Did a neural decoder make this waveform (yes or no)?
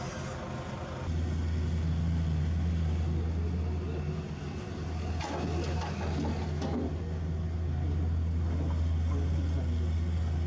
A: no